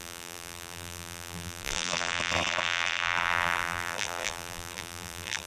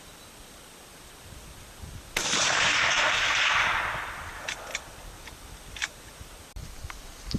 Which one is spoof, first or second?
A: first